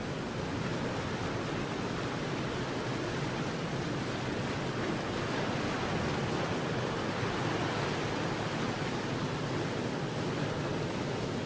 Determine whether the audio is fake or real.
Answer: real